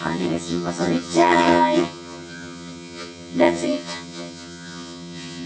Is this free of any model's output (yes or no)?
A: no